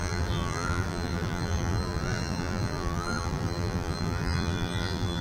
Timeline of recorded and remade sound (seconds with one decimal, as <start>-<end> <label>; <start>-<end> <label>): 0.0-5.2 remade

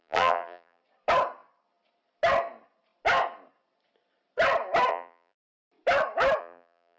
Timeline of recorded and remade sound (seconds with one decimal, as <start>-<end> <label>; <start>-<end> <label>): 0.0-0.8 remade; 0.8-4.9 recorded; 4.9-5.4 remade; 5.4-6.4 recorded; 6.4-7.0 remade

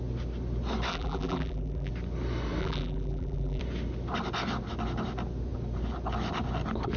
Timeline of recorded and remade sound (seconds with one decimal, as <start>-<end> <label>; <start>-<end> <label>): 0.0-0.9 recorded; 0.9-1.9 remade; 1.9-2.6 recorded; 2.6-3.6 remade; 3.6-7.0 recorded

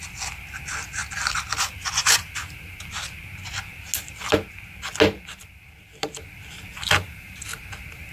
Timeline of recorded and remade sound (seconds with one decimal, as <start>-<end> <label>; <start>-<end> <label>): 0.0-1.0 recorded; 1.0-1.9 remade; 1.9-6.7 recorded; 6.7-7.6 remade; 7.6-8.1 recorded